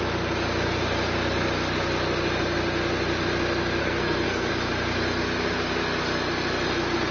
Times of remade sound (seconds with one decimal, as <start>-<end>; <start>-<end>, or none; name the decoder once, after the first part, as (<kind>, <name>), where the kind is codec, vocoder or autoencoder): 3.8-4.5 (codec, SNAC)